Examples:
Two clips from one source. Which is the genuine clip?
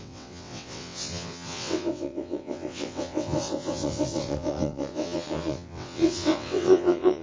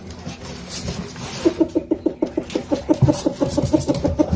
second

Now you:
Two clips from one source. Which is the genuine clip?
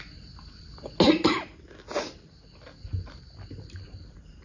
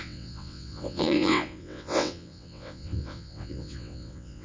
first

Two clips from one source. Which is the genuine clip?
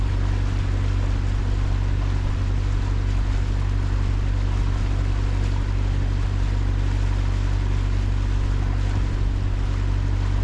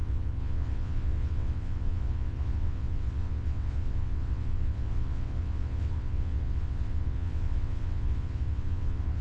first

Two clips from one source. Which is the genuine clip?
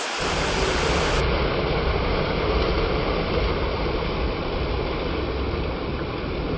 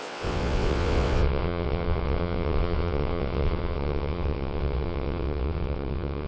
first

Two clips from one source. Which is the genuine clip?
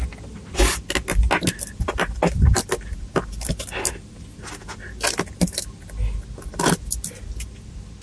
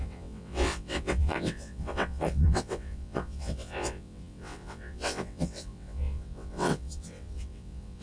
first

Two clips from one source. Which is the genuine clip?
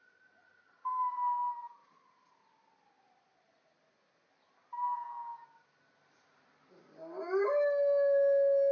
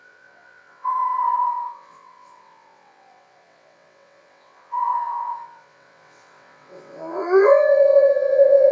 first